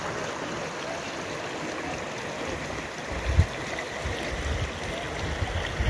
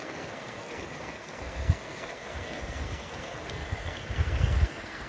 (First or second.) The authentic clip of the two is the first